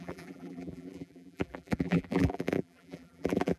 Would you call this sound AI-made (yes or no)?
yes